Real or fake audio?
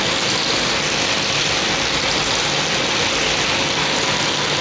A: real